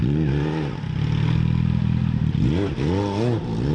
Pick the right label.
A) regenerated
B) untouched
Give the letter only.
B